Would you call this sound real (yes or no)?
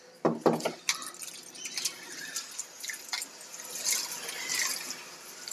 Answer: yes